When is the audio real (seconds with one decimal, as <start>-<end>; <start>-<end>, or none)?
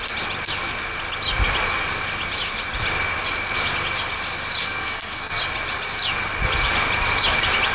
0.0-4.6; 5.4-7.7